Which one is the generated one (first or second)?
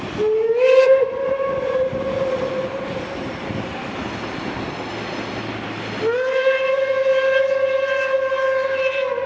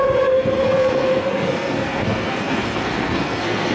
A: second